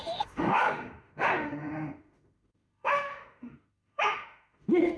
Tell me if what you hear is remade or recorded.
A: remade